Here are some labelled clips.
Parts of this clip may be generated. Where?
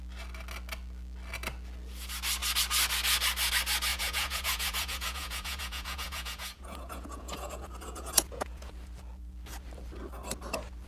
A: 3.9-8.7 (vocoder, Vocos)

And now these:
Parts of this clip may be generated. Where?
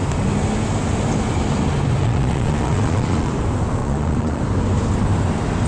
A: 2.0-3.3 (vocoder, Vocos); 3.8-4.4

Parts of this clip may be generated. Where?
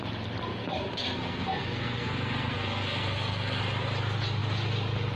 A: 0.5-3.6 (codec, SNAC)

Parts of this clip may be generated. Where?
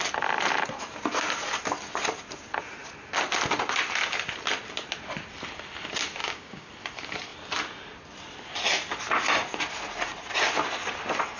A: 6.2-6.7 (codec, DAC)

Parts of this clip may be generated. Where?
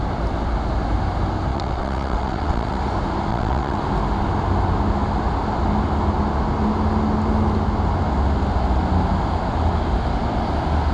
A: 1.5-2.8 (vocoder, WaveNeXt); 3.3-3.8